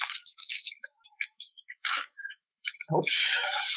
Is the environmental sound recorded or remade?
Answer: remade